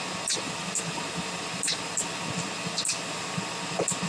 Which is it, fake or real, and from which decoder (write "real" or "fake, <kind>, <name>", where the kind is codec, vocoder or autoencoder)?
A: real